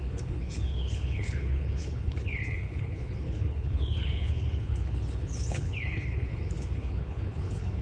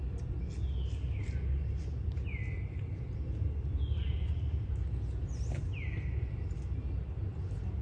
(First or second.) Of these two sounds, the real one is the second